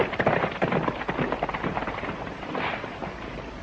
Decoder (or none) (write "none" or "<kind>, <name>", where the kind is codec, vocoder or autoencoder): vocoder, BigVGAN v2